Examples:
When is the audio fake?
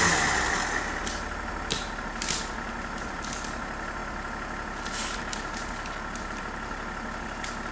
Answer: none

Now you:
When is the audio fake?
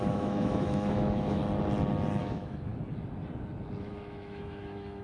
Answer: 0.0-1.4 (autoencoder, DAC-VAE); 2.2-2.7; 3.8-5.0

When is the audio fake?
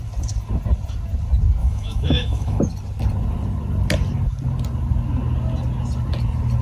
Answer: 1.6-2.6 (autoencoder, DAC-VAE)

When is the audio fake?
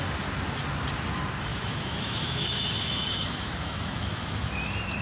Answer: 1.5-4.5 (autoencoder, DAC-VAE)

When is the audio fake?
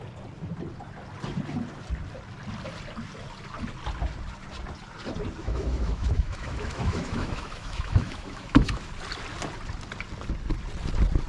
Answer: 5.4-8.9 (autoencoder, DAC-VAE)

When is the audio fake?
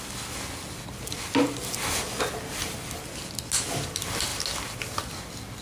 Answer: none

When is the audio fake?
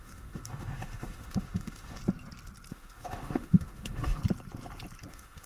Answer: 0.0-2.0 (autoencoder, DAC-VAE); 2.7-4.2; 5.1-5.5